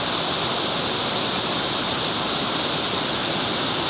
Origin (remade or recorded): recorded